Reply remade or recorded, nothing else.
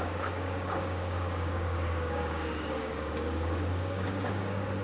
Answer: remade